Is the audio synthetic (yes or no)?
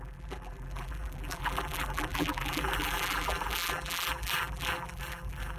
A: yes